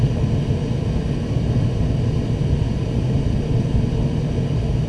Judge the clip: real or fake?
real